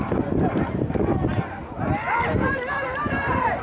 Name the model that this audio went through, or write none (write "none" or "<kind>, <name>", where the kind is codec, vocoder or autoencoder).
vocoder, BigVGAN v2